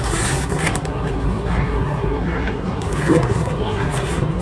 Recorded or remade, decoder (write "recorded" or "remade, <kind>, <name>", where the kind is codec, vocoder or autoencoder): remade, codec, SNAC